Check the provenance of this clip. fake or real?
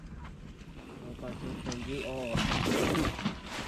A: real